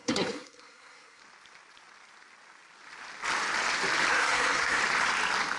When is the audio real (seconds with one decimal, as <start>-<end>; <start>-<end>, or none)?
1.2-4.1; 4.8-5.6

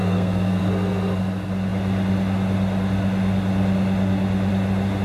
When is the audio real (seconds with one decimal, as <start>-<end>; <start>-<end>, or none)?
0.6-5.0

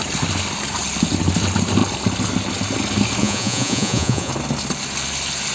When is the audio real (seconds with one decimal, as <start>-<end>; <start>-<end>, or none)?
0.0-3.2; 4.3-5.5

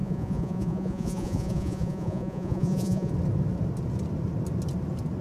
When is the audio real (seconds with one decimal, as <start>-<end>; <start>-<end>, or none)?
3.1-5.2

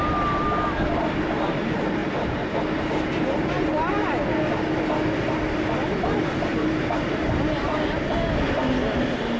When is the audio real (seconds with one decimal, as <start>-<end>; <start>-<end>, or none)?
0.0-2.0; 2.6-6.5; 8.0-9.4